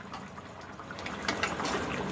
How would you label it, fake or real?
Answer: real